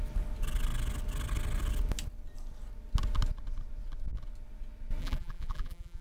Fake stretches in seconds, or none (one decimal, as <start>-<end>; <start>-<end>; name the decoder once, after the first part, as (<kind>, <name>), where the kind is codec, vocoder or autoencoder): 5.0-6.0 (vocoder, BigVGAN v2)